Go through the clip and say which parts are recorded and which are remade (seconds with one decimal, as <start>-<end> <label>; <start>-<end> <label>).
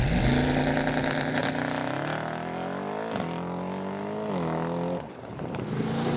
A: 0.0-6.2 recorded